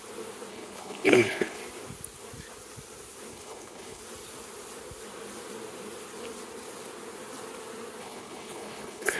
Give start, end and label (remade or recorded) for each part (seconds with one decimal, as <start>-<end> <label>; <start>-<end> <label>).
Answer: 0.0-0.5 recorded; 0.5-1.6 remade; 1.6-3.3 recorded; 3.3-4.0 remade; 4.0-8.0 recorded; 8.0-9.2 remade